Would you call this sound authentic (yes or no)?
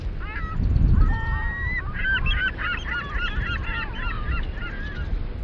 yes